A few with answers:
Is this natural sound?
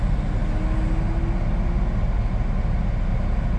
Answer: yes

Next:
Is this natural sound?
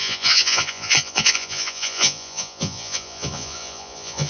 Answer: no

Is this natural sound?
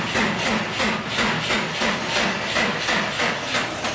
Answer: yes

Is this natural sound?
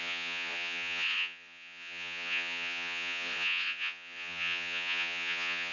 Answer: no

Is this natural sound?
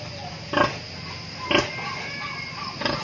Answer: yes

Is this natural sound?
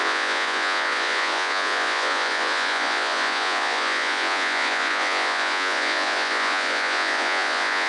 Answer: no